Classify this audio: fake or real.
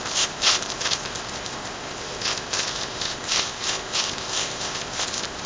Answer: fake